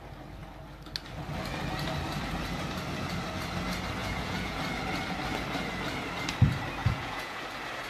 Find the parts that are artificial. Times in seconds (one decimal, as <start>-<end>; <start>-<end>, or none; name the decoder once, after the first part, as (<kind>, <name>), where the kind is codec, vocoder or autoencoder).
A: 4.0-4.6 (vocoder, Vocos); 6.8-7.4